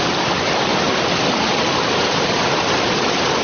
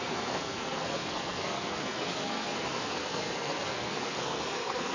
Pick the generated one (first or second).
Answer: second